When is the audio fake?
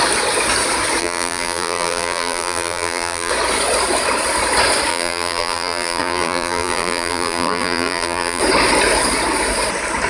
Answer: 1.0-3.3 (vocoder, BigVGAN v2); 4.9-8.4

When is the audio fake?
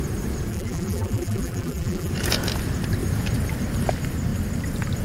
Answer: 0.5-2.1 (vocoder, BigVGAN v2)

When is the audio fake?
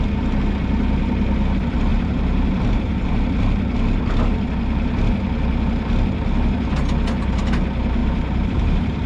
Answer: 1.9-3.1 (vocoder, BigVGAN v2); 8.0-9.1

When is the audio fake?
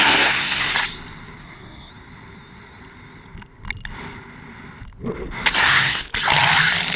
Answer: 0.0-0.7 (codec, SNAC); 1.4-1.9; 5.6-6.1